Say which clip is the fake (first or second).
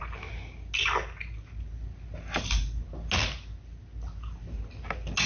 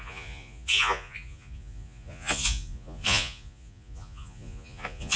second